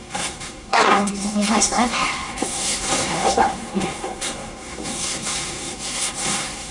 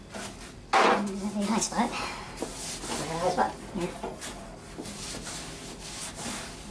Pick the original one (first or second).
second